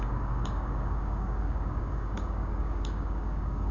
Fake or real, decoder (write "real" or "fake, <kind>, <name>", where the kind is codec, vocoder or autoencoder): fake, codec, DAC